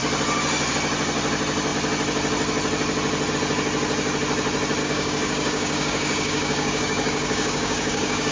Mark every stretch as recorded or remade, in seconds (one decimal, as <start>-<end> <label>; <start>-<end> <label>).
0.0-4.8 recorded; 4.8-8.3 remade